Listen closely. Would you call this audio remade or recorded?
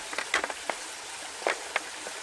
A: recorded